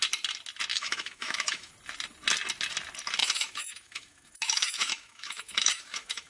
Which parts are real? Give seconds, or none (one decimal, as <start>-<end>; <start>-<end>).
0.0-0.7; 1.7-3.2